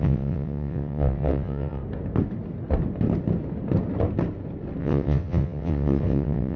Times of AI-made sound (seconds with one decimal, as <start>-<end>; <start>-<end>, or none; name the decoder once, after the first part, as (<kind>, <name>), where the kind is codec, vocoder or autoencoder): 0.0-1.8 (vocoder, WaveNeXt); 4.8-6.6